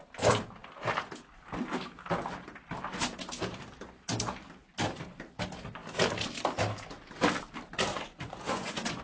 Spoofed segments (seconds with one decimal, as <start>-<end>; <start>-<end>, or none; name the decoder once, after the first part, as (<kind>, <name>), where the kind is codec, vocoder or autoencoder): 7.9-9.0 (vocoder, Vocos)

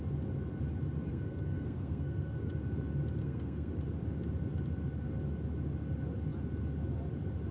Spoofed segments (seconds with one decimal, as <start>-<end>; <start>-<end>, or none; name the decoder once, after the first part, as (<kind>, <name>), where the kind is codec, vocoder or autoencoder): 1.1-2.5 (codec, SNAC); 3.2-3.7